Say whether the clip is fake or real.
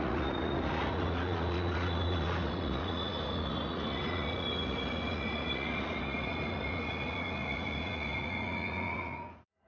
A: fake